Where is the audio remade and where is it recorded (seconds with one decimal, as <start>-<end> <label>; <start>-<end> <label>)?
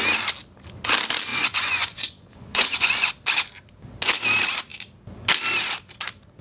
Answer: 0.0-1.3 recorded; 1.3-3.1 remade; 3.1-6.4 recorded